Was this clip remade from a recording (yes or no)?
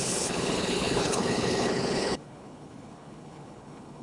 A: yes